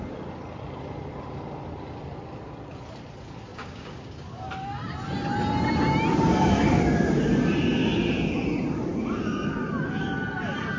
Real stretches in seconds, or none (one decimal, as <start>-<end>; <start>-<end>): 0.0-3.5; 4.5-10.8